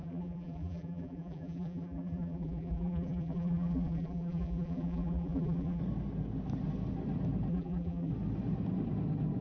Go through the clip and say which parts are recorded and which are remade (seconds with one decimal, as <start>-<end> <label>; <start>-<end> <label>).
0.0-5.8 remade; 5.8-7.5 recorded; 7.5-8.1 remade; 8.1-9.4 recorded